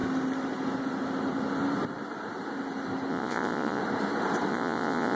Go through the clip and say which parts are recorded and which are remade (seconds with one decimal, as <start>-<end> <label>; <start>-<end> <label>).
0.0-3.1 recorded; 3.1-3.8 remade; 3.8-4.5 recorded; 4.5-5.2 remade